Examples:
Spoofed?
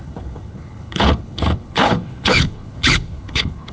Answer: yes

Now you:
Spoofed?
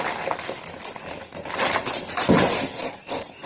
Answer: no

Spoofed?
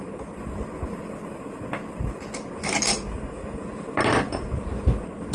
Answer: no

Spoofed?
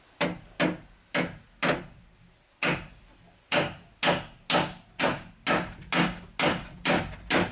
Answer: no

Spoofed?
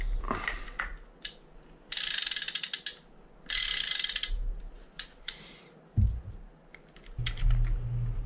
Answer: no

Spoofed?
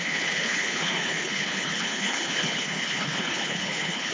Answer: yes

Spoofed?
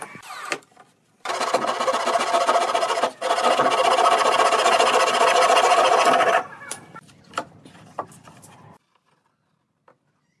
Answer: no